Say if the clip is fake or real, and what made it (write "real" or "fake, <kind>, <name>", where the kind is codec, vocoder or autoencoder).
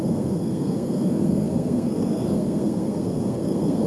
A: fake, codec, SNAC